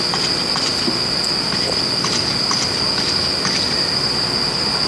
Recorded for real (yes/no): yes